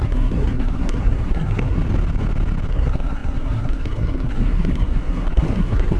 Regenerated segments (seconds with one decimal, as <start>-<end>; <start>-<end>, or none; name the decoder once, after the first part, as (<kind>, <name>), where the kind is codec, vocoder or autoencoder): 0.0-1.8 (codec, SNAC); 2.7-6.0